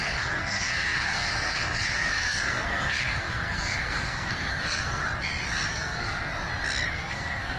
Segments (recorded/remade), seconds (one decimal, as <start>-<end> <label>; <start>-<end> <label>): 0.0-5.0 remade; 5.0-5.7 recorded; 5.7-6.3 remade; 6.3-6.9 recorded; 6.9-7.6 remade